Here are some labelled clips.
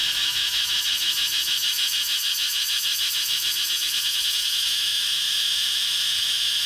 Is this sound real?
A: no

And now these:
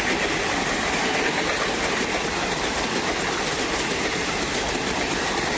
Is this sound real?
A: yes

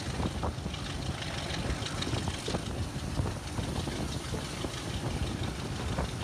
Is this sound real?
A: yes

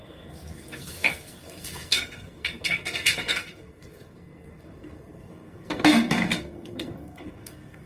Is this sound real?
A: no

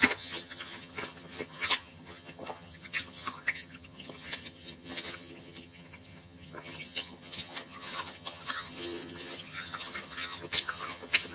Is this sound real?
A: no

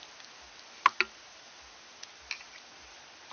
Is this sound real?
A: yes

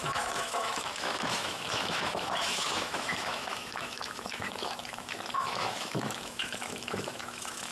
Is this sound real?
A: no